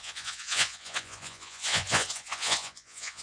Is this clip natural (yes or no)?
no